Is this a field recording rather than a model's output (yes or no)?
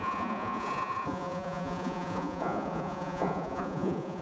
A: no